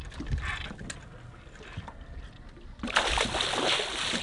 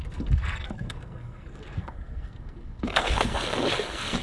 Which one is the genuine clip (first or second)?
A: first